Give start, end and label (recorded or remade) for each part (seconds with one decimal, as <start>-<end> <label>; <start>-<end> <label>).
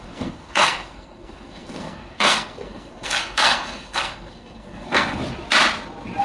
0.0-5.2 remade; 5.2-6.2 recorded